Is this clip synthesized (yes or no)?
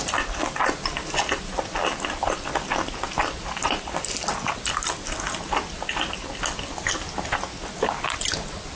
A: no